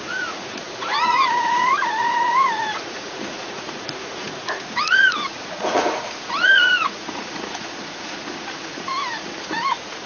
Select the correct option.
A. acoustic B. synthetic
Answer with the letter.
B